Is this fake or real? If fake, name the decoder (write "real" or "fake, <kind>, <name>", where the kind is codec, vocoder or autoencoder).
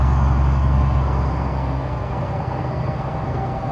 fake, codec, SNAC